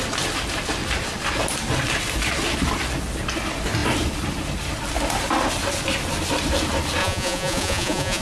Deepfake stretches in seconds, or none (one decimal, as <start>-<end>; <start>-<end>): 7.0-8.2